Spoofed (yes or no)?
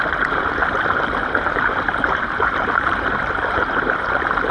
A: yes